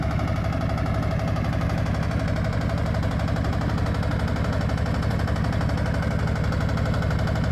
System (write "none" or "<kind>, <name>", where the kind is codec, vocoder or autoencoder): none